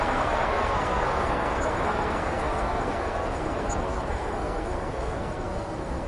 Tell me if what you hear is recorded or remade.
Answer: remade